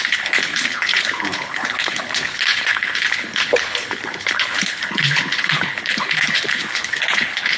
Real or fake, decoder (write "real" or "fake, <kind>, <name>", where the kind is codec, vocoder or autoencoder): fake, codec, HILCodec